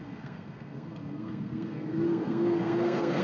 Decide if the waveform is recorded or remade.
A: remade